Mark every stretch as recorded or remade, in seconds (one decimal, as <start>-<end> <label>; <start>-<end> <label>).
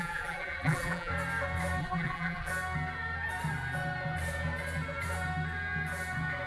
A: 0.0-1.1 remade; 1.1-1.8 recorded; 1.8-2.5 remade; 2.5-6.5 recorded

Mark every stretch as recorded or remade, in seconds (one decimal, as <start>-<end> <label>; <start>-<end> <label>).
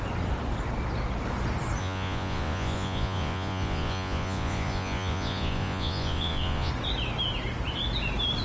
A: 0.0-1.8 recorded; 1.8-6.7 remade; 6.7-8.4 recorded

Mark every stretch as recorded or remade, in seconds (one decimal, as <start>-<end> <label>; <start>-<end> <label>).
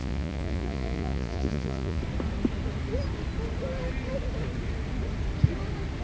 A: 0.0-2.0 remade; 2.0-6.0 recorded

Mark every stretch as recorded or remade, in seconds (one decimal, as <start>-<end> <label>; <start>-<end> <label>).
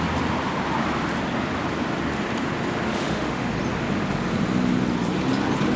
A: 0.0-2.9 recorded; 2.9-3.5 remade; 3.5-5.8 recorded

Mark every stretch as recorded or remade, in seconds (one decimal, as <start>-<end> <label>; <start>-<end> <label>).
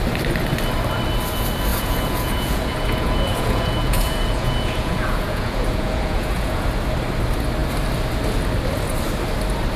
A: 0.0-1.7 recorded; 1.7-6.7 remade; 6.7-9.8 recorded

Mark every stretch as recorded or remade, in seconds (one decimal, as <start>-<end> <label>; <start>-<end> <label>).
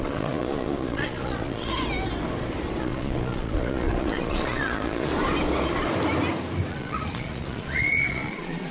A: 0.0-1.7 remade; 1.7-2.8 recorded; 2.8-5.1 remade; 5.1-6.7 recorded; 6.7-8.7 remade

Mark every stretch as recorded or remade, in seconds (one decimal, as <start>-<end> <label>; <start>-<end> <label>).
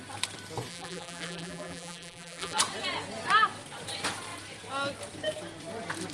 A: 0.0-0.7 recorded; 0.7-2.6 remade; 2.6-6.1 recorded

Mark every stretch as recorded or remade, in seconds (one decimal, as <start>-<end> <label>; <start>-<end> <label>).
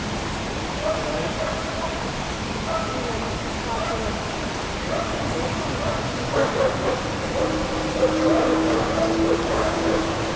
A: 0.0-8.3 recorded; 8.3-9.0 remade; 9.0-9.5 recorded; 9.5-10.0 remade; 10.0-10.4 recorded